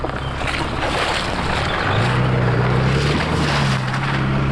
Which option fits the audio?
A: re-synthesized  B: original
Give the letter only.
B